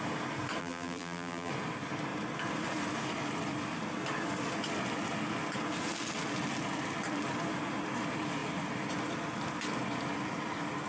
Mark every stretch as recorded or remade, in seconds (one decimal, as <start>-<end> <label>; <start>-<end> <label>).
0.0-0.6 recorded; 0.6-1.5 remade; 1.5-10.9 recorded